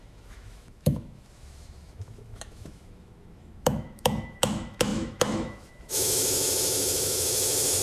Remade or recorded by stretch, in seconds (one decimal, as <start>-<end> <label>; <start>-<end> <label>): 0.0-7.8 remade